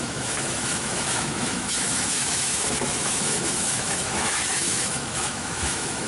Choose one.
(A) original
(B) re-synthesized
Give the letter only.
B